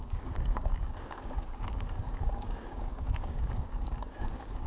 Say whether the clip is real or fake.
fake